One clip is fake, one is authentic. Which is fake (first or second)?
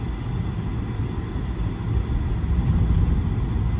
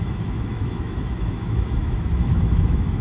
second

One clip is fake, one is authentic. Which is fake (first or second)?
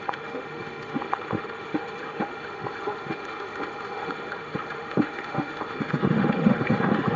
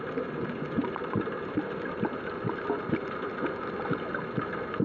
first